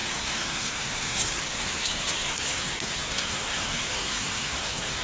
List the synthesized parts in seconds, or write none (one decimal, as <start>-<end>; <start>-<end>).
0.0-5.0

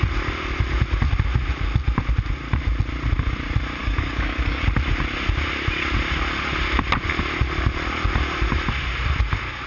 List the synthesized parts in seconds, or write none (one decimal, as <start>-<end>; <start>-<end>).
3.8-4.6